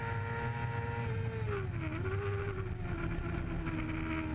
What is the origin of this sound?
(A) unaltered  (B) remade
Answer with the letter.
A